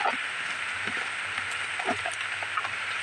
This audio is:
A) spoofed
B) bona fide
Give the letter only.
B